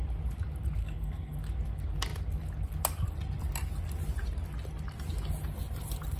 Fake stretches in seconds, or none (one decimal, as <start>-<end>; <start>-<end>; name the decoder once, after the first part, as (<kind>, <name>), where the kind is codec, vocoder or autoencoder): 0.8-1.4 (codec, SNAC)